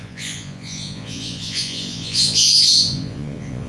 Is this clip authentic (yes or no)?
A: no